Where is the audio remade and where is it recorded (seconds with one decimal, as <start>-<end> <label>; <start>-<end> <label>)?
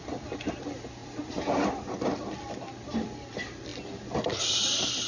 0.0-1.0 remade; 1.0-2.1 recorded; 2.1-3.7 remade; 3.7-5.1 recorded